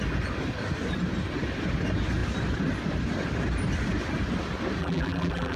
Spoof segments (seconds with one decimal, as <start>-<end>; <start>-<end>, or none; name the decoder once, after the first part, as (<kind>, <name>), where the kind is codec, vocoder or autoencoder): 4.8-5.6 (vocoder, BigVGAN v2)